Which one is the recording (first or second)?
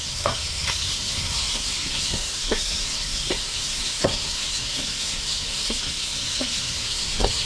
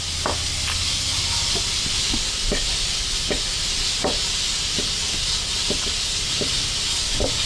second